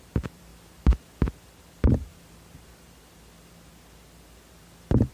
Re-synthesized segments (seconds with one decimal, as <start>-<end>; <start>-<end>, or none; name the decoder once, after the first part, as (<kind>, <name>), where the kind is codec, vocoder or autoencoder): 0.0-0.5 (vocoder, BigVGAN v2); 1.7-2.1